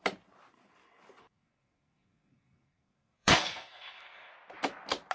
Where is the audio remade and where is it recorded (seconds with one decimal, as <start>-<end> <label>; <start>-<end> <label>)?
0.0-1.2 recorded; 1.2-4.3 remade; 4.3-5.1 recorded